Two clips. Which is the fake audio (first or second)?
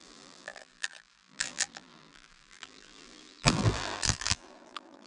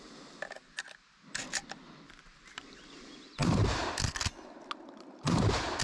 first